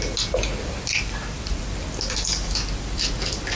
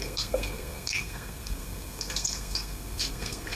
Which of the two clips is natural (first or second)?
first